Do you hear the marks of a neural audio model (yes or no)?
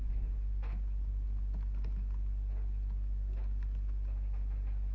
no